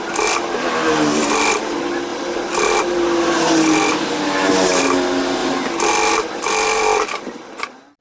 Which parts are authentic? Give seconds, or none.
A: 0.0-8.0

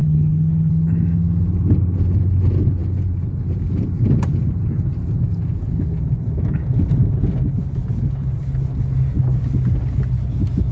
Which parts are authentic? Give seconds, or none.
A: 0.7-10.7

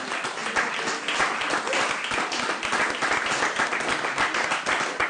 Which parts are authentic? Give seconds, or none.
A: 0.0-5.1

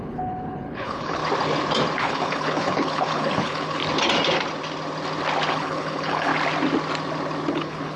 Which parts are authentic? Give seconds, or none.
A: 1.2-2.0; 3.8-5.5; 6.3-7.5